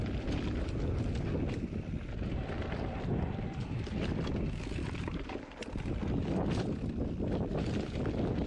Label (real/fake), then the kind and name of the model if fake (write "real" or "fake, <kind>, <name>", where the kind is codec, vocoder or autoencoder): real